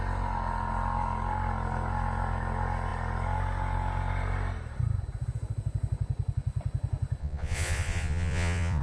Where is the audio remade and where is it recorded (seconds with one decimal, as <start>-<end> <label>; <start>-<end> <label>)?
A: 0.0-7.2 recorded; 7.2-8.8 remade